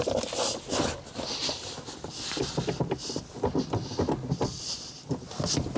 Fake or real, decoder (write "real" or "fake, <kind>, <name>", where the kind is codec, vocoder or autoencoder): real